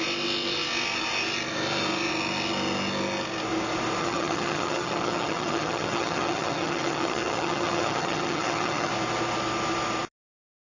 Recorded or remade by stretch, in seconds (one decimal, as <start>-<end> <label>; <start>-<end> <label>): 0.0-4.0 recorded; 4.0-8.9 remade; 8.9-10.7 recorded